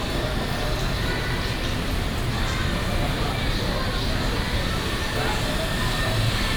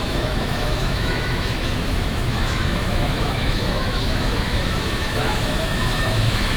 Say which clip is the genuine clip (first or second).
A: first